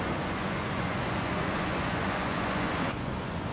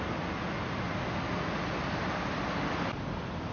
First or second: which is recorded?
second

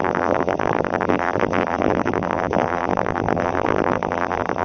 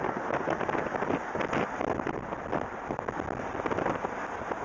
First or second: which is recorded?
second